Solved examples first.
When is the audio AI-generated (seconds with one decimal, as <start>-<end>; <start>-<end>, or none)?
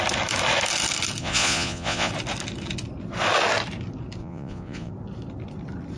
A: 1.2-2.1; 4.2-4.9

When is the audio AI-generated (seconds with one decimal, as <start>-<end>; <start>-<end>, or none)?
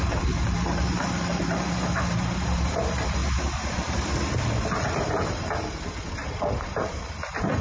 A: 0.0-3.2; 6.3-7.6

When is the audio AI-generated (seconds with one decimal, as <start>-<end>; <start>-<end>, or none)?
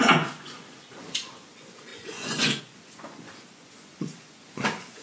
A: 0.0-5.0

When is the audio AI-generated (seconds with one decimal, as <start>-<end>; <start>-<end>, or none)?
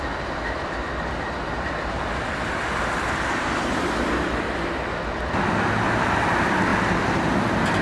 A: none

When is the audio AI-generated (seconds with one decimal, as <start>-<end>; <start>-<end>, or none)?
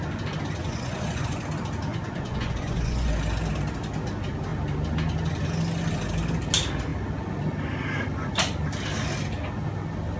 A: 0.6-1.4; 1.9-3.1